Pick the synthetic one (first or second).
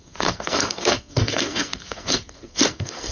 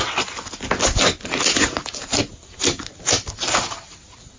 first